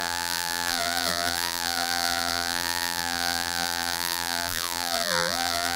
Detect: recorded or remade remade